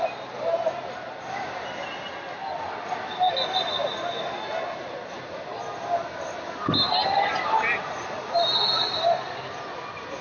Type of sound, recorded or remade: recorded